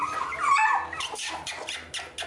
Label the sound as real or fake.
real